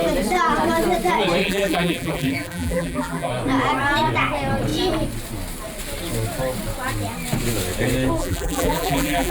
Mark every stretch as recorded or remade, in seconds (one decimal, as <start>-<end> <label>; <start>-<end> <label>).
0.0-1.4 recorded; 1.4-3.3 remade; 3.3-8.2 recorded; 8.2-9.3 remade